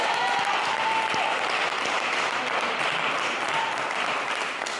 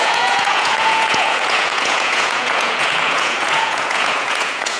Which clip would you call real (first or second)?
first